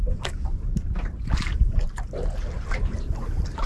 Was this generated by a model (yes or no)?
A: no